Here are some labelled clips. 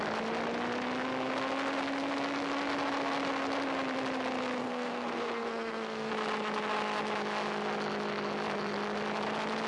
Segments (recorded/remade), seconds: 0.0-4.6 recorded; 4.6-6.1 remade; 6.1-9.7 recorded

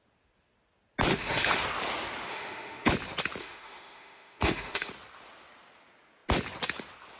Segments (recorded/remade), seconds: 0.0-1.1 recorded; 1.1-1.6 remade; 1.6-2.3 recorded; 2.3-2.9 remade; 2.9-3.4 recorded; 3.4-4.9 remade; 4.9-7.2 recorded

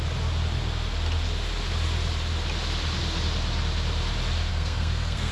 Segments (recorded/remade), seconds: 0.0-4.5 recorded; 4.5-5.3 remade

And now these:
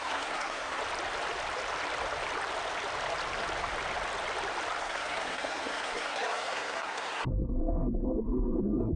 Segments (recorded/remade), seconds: 0.0-0.8 remade; 0.8-4.8 recorded; 4.8-9.0 remade

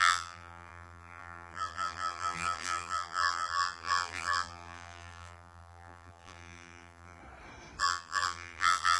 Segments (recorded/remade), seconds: 0.0-7.2 remade; 7.2-7.8 recorded; 7.8-9.0 remade